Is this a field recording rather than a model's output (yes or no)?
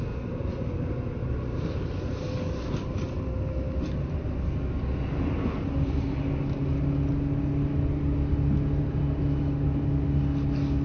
yes